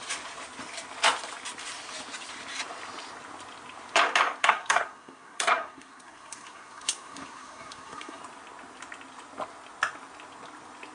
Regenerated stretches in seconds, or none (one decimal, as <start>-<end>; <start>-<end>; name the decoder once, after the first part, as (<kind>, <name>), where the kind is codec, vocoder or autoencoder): 4.4-8.2 (codec, SNAC)